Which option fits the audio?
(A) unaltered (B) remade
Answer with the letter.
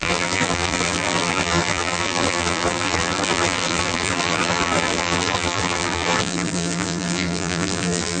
B